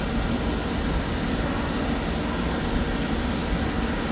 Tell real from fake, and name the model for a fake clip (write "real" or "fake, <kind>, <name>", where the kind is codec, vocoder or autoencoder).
real